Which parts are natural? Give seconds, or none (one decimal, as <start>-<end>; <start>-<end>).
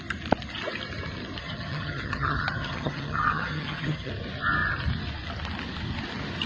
0.0-1.4; 4.1-6.5